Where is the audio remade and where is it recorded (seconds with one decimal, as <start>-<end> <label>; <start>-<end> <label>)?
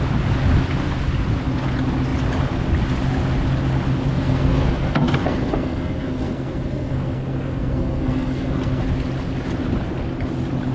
0.0-4.1 recorded; 4.1-8.8 remade; 8.8-10.7 recorded